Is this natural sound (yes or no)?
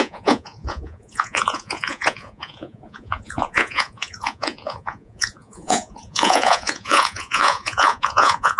no